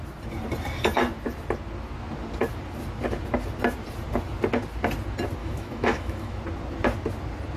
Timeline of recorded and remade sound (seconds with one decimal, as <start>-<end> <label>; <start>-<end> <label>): 0.0-5.4 recorded; 5.4-6.4 remade; 6.4-7.6 recorded